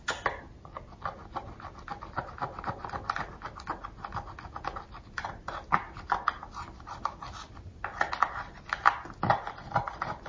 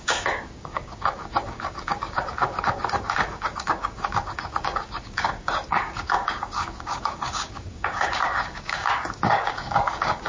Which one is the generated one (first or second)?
second